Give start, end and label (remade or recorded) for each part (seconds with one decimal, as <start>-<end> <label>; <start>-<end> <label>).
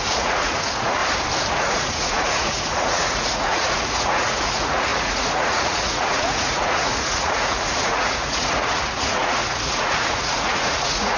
0.0-1.0 remade; 1.0-1.5 recorded; 1.5-11.2 remade